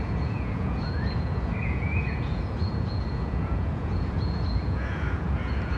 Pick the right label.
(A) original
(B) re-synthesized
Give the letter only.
B